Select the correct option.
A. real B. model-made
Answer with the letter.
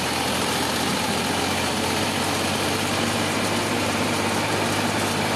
B